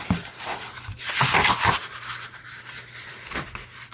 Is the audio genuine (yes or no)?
yes